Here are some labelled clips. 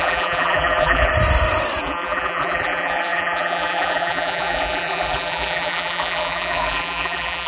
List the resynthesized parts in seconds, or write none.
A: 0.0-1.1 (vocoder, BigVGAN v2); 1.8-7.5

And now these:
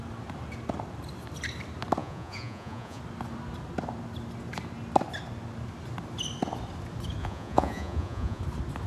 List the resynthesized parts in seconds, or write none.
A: 2.0-3.0 (vocoder, Vocos); 7.2-8.4

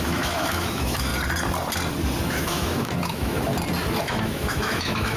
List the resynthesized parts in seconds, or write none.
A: 0.0-1.1 (autoencoder, DAC-VAE); 2.3-3.5; 4.0-5.2

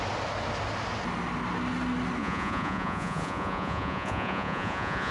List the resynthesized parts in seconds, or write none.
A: 2.2-5.1 (vocoder, Vocos)

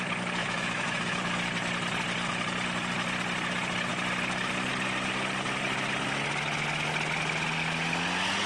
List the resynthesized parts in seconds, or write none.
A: 0.4-1.2 (autoencoder, DAC-VAE)

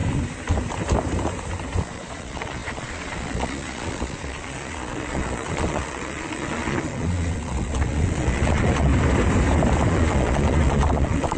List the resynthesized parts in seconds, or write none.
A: 1.8-8.9 (vocoder, Vocos); 9.9-11.4

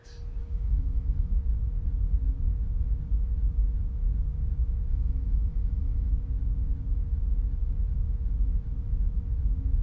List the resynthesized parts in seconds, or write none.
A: 0.4-1.3 (autoencoder, DAC-VAE); 4.9-6.1

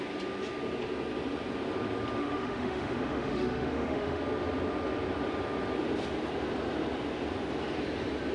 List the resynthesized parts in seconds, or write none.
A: 2.2-4.2 (autoencoder, DAC-VAE)